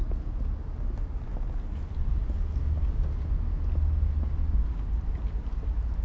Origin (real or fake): real